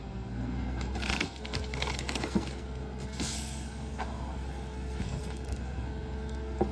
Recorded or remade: remade